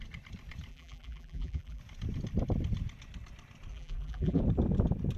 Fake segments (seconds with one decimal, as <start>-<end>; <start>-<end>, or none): 0.7-1.8; 3.7-4.4